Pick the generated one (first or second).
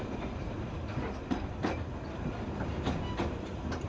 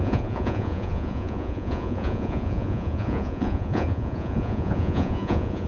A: second